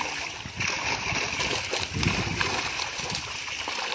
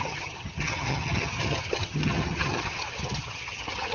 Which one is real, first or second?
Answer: first